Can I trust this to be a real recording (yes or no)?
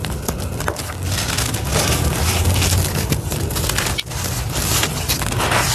yes